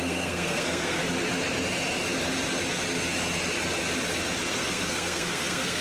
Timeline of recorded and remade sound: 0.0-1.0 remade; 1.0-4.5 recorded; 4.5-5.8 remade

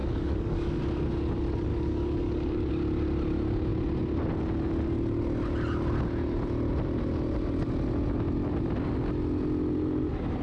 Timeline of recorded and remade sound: 0.0-0.8 remade; 0.8-1.7 recorded; 1.7-2.7 remade; 2.7-10.4 recorded

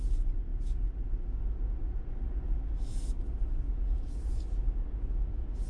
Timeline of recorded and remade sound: 0.0-5.7 recorded

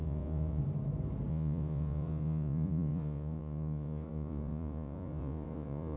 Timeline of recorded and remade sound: 0.0-0.6 remade; 0.6-1.3 recorded; 1.3-6.0 remade

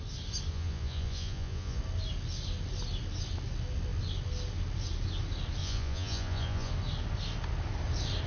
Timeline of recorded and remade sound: 0.0-0.5 recorded; 0.5-1.8 remade; 1.8-5.6 recorded; 5.6-6.7 remade; 6.7-8.3 recorded

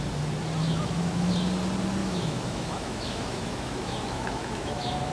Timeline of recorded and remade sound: 0.0-0.6 recorded; 0.6-1.3 remade; 1.3-2.0 recorded; 2.0-5.1 remade

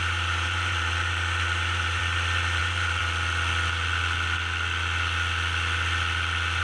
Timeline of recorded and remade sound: 0.0-2.0 remade; 2.0-2.6 recorded; 2.6-3.0 remade; 3.0-6.6 recorded